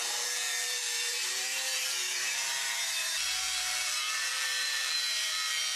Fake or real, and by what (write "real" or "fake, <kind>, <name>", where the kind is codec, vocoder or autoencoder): fake, vocoder, BigVGAN v2